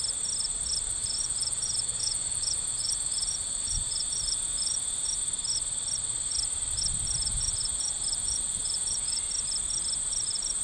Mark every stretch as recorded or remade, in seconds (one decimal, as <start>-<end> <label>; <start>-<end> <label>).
0.0-1.0 recorded; 1.0-5.2 remade; 5.2-7.3 recorded; 7.3-9.2 remade; 9.2-10.6 recorded